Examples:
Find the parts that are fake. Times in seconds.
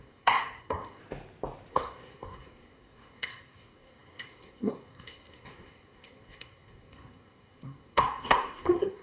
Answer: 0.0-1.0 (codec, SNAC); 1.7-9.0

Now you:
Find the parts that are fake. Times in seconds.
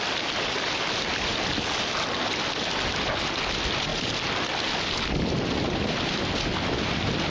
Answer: none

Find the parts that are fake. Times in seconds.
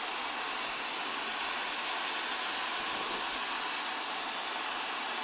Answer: none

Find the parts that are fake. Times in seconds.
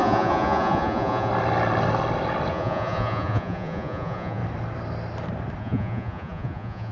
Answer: 0.0-1.3 (vocoder, Vocos); 2.5-4.4; 5.6-6.9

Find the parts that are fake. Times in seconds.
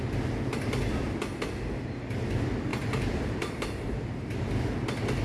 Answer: 2.7-4.6 (vocoder, BigVGAN v2)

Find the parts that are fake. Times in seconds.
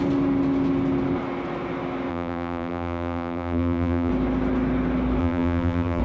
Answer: 2.1-4.1 (vocoder, BigVGAN v2); 5.2-6.0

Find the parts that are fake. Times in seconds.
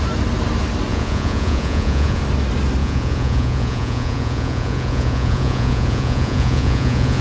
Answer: 0.9-2.2 (vocoder, Vocos); 2.8-7.2